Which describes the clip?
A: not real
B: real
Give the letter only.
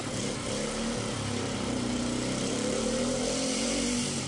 A